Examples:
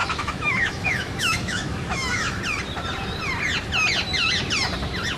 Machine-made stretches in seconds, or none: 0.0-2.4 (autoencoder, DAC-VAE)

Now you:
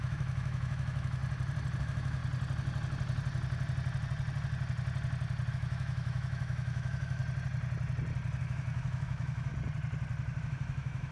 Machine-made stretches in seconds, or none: 0.0-1.2 (autoencoder, DAC-VAE); 1.8-2.2; 5.5-7.2; 8.4-9.5; 10.4-11.1

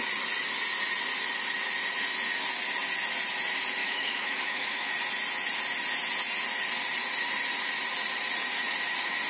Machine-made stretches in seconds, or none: 3.8-4.9 (autoencoder, DAC-VAE)

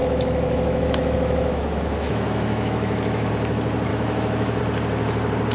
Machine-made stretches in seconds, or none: 0.0-3.3 (autoencoder, DAC-VAE); 3.9-4.6

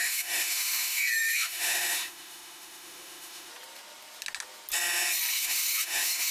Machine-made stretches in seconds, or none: 0.0-3.5 (autoencoder, DAC-VAE); 5.3-6.3

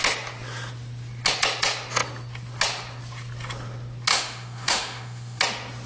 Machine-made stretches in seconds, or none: 4.1-5.4 (autoencoder, DAC-VAE)

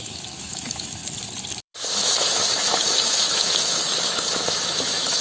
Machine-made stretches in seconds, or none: 0.0-1.0 (autoencoder, DAC-VAE); 1.6-5.2